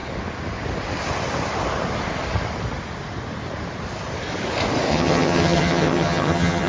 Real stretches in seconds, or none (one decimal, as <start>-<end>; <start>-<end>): 0.0-4.9